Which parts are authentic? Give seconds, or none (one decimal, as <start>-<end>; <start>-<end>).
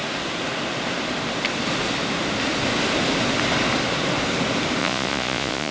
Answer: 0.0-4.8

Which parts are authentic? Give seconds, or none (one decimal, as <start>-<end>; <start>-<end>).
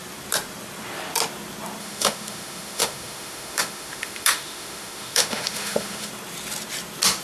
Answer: 0.0-1.8; 6.1-7.2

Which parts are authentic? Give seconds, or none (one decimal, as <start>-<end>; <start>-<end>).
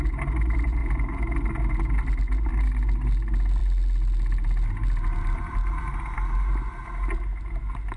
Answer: 0.0-8.0